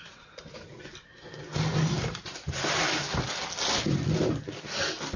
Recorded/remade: recorded